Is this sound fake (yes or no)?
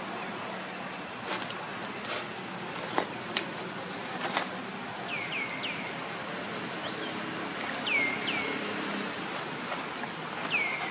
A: no